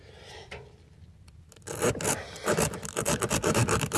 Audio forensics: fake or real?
real